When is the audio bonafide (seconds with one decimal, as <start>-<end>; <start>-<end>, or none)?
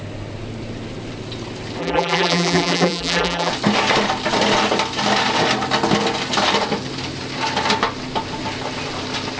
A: 0.0-1.8; 3.5-9.4